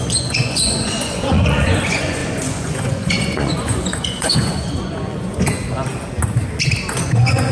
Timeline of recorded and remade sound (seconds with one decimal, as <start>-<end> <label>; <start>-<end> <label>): 0.0-5.6 remade; 5.6-6.9 recorded; 6.9-7.5 remade